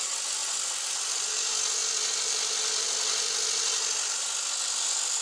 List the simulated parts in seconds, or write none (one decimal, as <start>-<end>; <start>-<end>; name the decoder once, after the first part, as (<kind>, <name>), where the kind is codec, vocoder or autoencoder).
none